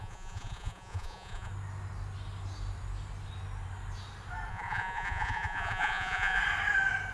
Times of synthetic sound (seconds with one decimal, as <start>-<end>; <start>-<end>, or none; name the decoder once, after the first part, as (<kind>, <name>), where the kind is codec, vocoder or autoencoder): 0.0-1.5 (vocoder, Vocos); 4.5-6.4